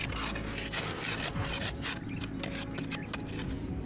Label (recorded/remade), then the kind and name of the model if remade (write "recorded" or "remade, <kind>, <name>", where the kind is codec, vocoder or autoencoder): recorded